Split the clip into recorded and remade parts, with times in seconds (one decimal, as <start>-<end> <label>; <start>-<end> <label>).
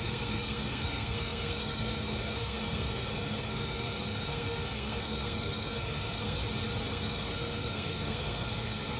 0.0-6.4 remade; 6.4-6.9 recorded; 6.9-9.0 remade